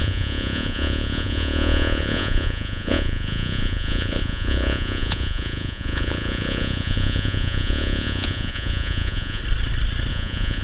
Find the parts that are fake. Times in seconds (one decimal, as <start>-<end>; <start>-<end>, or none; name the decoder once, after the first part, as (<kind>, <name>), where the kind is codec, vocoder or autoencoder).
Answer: 0.0-9.4 (vocoder, Vocos); 10.1-10.6